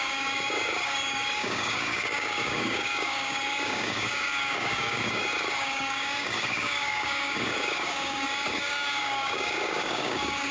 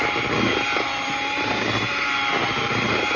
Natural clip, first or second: second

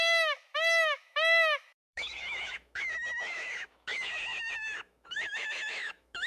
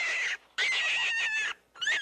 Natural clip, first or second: second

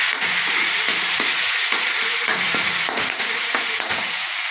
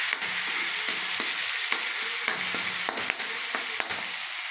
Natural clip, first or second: second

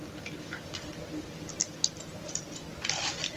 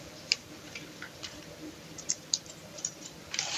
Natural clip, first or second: first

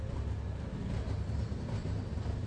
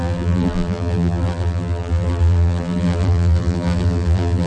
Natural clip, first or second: first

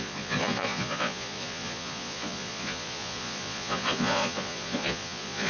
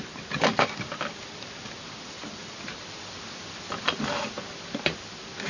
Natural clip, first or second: second